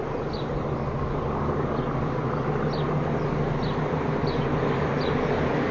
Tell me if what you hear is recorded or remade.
recorded